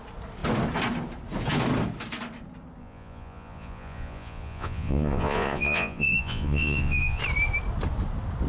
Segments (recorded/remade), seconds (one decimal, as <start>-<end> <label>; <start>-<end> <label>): 0.0-2.8 recorded; 2.8-7.2 remade; 7.2-8.5 recorded